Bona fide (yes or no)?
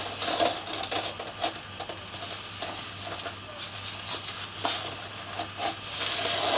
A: yes